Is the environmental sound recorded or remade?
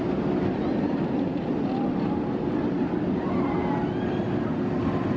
recorded